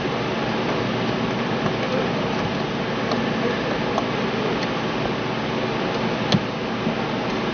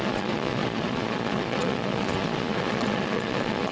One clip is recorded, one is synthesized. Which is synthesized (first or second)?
second